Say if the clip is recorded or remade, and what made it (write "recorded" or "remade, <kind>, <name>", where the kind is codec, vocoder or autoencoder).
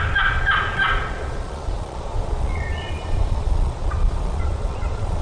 remade, vocoder, Vocos